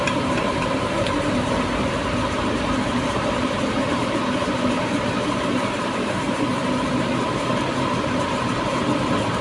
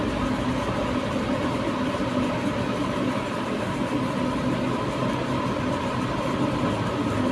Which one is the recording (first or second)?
second